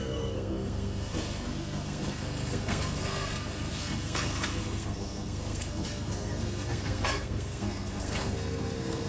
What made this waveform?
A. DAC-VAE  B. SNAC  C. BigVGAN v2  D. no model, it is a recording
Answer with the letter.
B